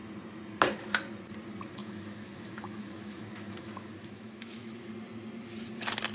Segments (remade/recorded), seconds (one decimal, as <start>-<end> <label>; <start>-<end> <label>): 0.0-1.8 recorded; 1.8-4.9 remade; 4.9-6.1 recorded